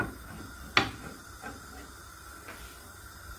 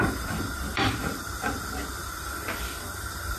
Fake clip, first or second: second